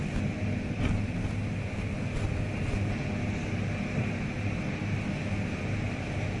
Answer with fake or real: real